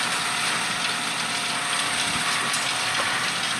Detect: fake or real real